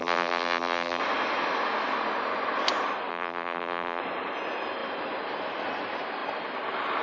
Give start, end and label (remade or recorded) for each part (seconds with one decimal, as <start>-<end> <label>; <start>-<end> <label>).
0.0-1.0 remade; 1.0-3.1 recorded; 3.1-4.0 remade; 4.0-7.0 recorded